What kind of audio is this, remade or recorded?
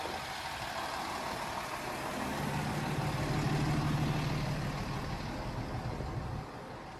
recorded